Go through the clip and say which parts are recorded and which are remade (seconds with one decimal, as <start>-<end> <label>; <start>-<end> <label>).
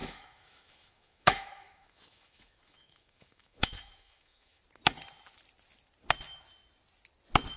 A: 0.0-4.6 remade; 4.6-7.6 recorded